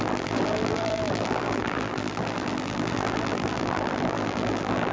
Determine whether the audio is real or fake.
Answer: fake